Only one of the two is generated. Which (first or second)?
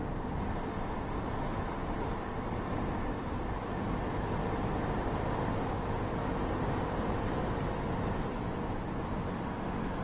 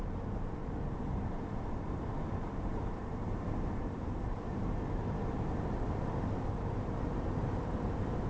second